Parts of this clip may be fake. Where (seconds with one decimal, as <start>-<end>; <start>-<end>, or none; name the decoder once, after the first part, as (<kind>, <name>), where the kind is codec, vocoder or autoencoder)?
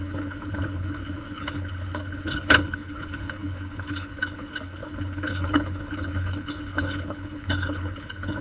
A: 0.0-8.4 (codec, HILCodec)